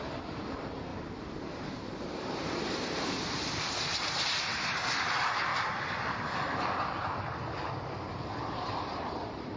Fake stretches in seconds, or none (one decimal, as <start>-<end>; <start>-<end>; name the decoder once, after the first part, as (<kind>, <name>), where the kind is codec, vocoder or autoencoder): 0.0-5.5 (vocoder, BigVGAN v2); 8.3-9.6